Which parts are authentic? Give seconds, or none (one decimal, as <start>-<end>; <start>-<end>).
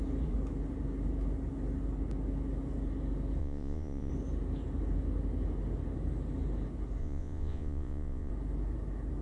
0.0-3.4; 4.1-7.0; 8.3-9.2